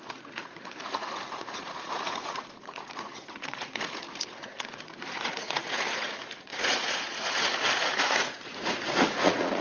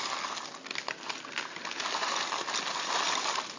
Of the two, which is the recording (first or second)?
second